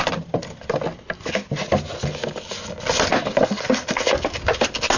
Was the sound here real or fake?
real